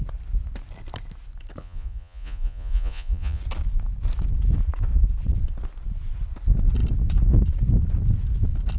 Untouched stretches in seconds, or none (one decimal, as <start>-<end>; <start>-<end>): 0.0-1.6; 3.4-8.8